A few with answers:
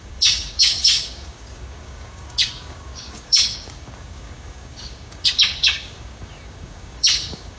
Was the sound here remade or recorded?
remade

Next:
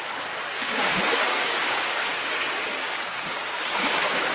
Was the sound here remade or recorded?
remade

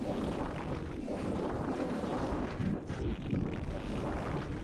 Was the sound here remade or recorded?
recorded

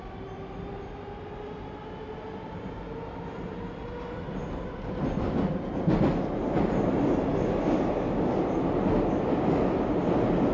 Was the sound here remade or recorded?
recorded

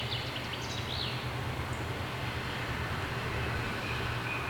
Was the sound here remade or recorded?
recorded